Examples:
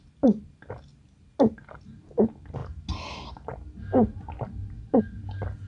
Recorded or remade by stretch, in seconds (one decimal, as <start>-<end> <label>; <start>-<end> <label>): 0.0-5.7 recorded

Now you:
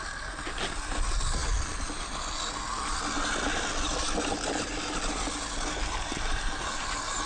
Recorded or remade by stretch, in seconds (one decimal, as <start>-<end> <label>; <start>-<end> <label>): 0.0-7.3 recorded

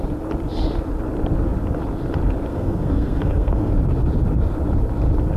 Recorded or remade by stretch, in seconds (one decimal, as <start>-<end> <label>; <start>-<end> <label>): 0.0-2.5 recorded; 2.5-3.7 remade; 3.7-5.4 recorded